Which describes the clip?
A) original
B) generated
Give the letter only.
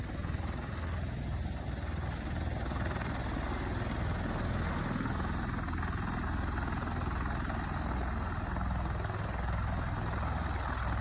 A